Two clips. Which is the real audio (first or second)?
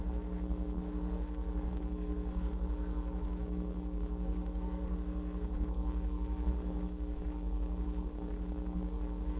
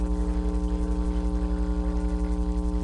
second